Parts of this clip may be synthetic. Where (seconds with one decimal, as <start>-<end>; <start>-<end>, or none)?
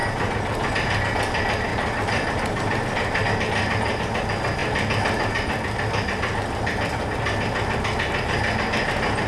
1.7-3.3